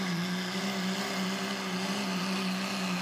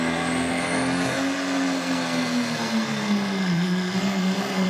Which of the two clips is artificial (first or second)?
second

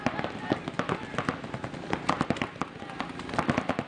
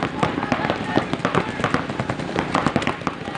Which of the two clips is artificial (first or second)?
second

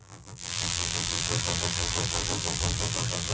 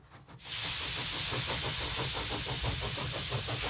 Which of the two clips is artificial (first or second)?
first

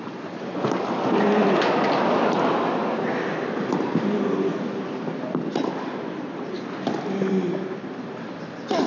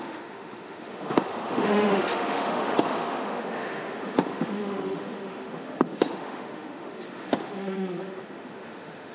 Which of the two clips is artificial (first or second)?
second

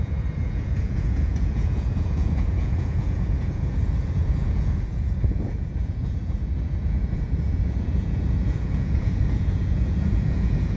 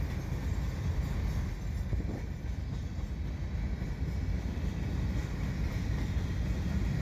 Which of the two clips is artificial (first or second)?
first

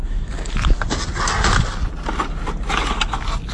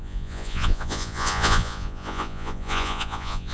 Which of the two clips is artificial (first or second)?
second